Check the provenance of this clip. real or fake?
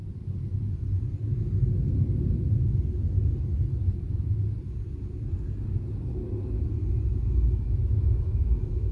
real